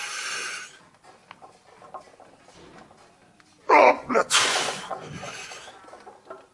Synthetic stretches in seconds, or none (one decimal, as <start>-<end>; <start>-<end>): 3.6-5.6

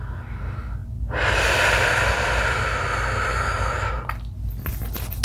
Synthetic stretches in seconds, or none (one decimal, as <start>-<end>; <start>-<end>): none

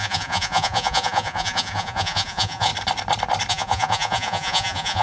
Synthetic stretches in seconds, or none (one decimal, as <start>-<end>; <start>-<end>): 0.0-2.7; 3.5-5.0

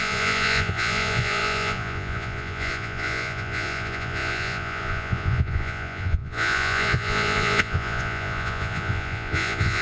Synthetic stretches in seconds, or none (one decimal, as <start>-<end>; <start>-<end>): 0.0-9.8

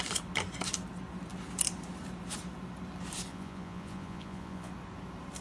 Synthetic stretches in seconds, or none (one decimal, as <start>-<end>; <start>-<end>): 3.3-4.7